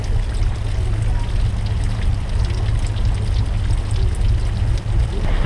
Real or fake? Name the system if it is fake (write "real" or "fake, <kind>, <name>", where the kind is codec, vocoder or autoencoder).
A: real